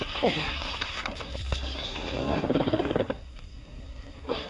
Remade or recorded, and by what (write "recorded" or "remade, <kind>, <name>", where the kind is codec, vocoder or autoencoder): remade, codec, SNAC